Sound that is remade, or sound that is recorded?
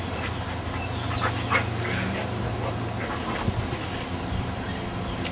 recorded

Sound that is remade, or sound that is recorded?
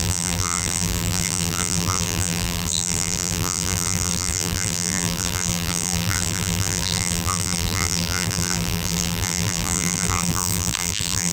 remade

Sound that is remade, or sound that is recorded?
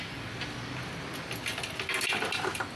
recorded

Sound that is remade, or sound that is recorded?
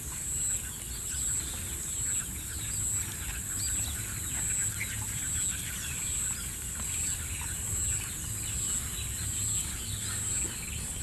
recorded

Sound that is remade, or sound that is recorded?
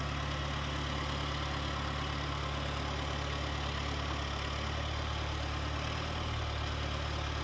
recorded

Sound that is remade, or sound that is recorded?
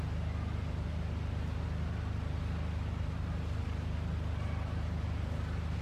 recorded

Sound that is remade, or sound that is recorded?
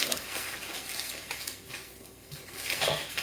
remade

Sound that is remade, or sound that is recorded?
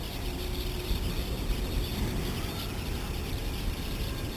recorded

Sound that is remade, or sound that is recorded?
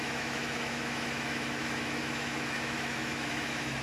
remade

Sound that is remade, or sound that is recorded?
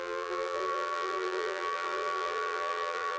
remade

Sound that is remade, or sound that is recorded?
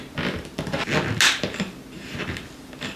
recorded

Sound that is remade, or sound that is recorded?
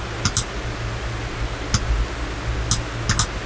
recorded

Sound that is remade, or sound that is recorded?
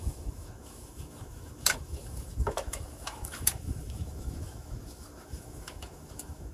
remade